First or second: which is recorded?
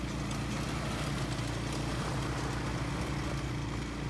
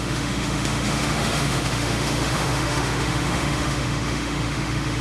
first